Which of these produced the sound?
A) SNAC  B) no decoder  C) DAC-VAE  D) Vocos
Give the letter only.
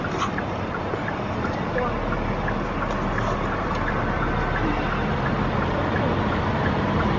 B